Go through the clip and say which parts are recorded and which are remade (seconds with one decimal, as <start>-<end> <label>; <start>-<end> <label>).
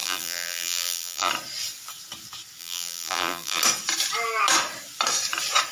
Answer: 0.0-1.3 remade; 1.3-2.6 recorded; 2.6-3.6 remade; 3.6-5.7 recorded